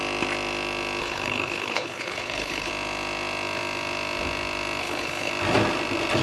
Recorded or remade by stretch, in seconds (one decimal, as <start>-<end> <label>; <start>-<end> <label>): 0.0-1.0 recorded; 1.0-2.7 remade; 2.7-4.8 recorded; 4.8-5.3 remade; 5.3-6.2 recorded